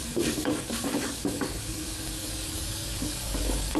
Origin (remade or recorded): remade